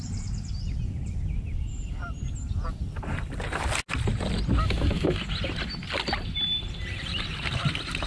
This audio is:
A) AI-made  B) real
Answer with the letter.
B